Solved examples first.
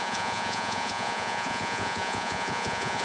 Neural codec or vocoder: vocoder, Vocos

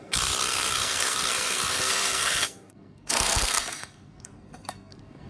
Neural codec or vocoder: codec, SNAC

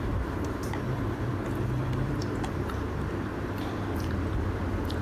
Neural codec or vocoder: vocoder, BigVGAN v2